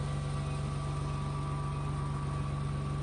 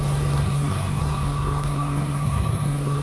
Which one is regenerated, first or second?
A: second